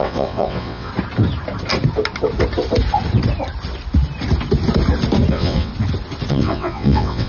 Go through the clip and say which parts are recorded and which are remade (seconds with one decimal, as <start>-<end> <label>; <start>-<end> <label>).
0.0-0.9 remade; 0.9-5.3 recorded; 5.3-5.7 remade; 5.7-6.3 recorded; 6.3-7.3 remade